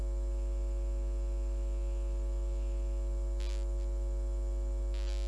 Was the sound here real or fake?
real